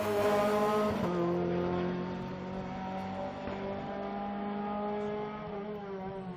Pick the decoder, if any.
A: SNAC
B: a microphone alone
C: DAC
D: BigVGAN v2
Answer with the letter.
B